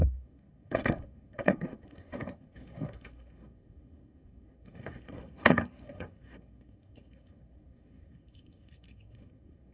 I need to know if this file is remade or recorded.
remade